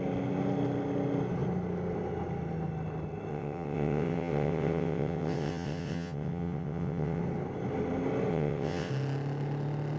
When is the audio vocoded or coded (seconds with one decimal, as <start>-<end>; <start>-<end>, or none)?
3.3-7.2; 8.3-8.9